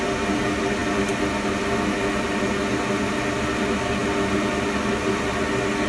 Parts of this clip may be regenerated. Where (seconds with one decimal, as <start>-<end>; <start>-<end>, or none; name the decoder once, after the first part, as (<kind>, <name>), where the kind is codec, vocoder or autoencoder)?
none